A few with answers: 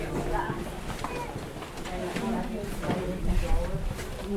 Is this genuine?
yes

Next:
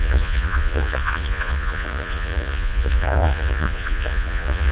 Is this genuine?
no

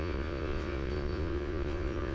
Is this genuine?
no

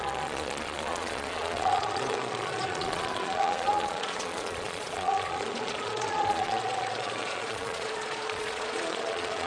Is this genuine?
no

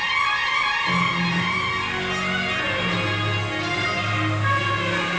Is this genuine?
yes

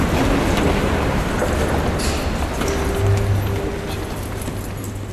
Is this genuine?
yes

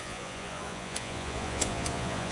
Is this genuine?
no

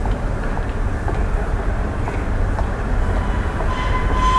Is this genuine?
yes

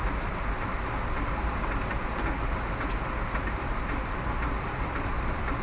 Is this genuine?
yes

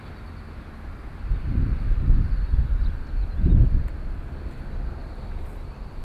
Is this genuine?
yes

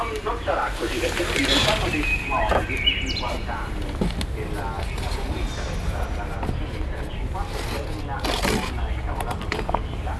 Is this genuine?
yes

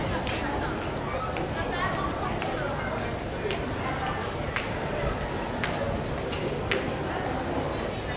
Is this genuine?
yes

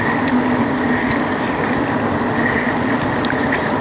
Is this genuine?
yes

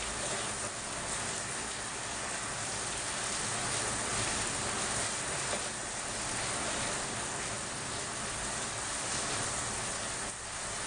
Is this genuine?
yes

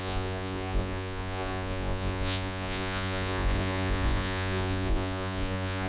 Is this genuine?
no